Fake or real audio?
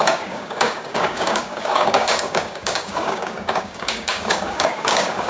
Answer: fake